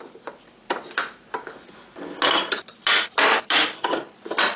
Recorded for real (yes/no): yes